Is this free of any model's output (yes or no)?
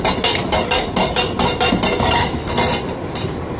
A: yes